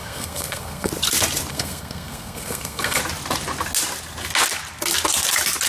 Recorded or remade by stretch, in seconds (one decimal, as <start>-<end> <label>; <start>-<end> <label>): 0.0-0.9 remade; 0.9-1.5 recorded; 1.5-3.0 remade; 3.0-5.7 recorded